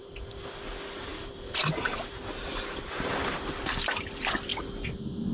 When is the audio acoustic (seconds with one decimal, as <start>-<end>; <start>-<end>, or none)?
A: 0.0-1.1; 3.7-5.3